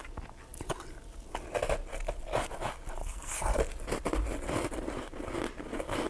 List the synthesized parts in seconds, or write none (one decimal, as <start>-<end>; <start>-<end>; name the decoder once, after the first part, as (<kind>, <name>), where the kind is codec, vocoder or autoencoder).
3.0-3.6 (codec, SNAC)

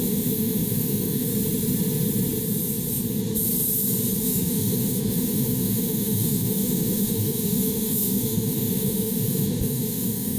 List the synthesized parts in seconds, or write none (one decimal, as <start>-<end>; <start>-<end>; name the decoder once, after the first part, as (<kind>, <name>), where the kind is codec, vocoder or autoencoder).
0.0-1.3 (autoencoder, DAC-VAE); 4.2-10.4

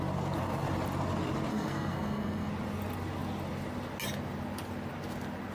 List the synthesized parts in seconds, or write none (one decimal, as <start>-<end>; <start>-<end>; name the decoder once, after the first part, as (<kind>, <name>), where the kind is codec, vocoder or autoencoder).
1.5-2.5 (codec, SNAC)

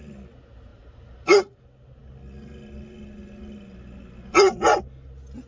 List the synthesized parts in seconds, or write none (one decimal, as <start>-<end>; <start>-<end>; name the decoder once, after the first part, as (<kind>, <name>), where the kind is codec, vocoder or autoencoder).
0.7-1.6 (vocoder, BigVGAN v2)